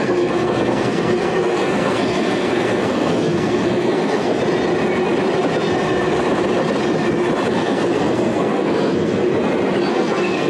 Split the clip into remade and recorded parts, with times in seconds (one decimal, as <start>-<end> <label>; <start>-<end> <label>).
0.0-4.4 remade; 4.4-7.5 recorded; 7.5-9.3 remade; 9.3-9.9 recorded; 9.9-10.5 remade